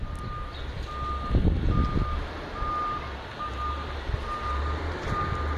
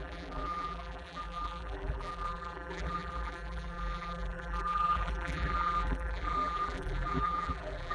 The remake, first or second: second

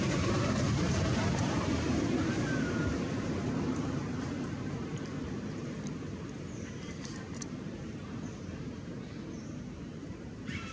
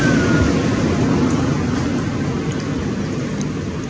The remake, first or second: first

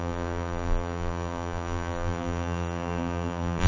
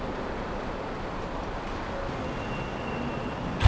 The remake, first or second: first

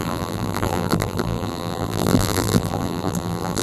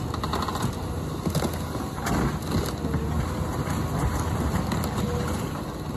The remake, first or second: first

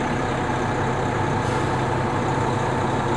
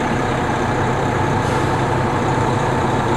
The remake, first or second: second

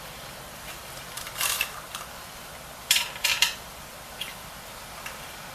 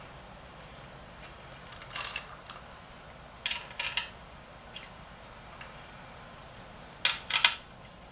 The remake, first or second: first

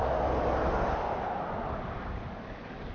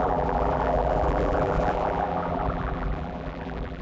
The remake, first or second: second